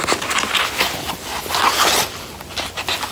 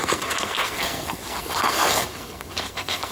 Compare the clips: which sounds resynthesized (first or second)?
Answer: second